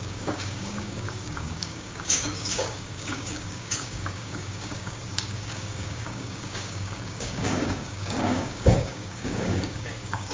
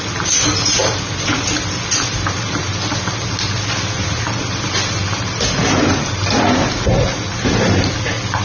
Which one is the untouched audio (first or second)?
second